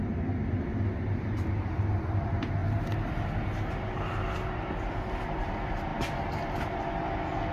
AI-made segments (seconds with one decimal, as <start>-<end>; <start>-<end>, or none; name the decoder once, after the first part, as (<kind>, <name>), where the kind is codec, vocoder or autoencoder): none